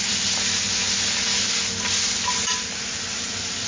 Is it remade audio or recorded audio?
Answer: recorded